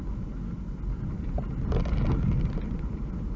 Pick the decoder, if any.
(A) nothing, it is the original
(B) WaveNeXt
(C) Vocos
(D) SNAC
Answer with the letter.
A